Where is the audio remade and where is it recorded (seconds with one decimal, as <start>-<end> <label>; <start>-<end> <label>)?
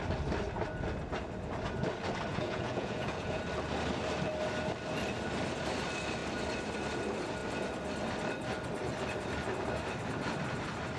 0.0-2.3 recorded; 2.3-3.4 remade; 3.4-11.0 recorded